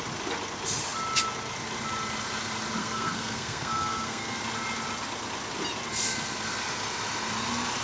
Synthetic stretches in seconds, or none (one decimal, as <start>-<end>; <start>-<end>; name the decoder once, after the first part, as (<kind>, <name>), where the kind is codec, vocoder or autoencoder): 2.8-4.4 (codec, SNAC)